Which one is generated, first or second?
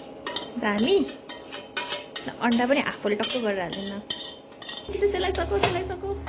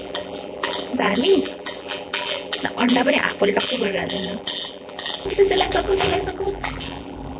second